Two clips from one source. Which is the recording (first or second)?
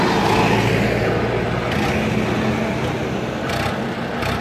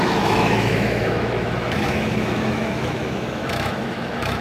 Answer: first